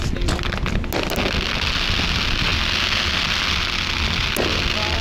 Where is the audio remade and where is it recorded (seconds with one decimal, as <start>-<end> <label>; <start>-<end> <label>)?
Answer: 0.0-5.0 recorded